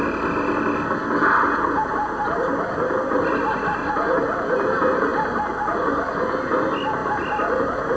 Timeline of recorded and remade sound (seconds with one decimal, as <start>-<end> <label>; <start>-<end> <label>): 0.0-8.0 recorded